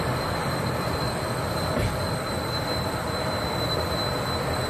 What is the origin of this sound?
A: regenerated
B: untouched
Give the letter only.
A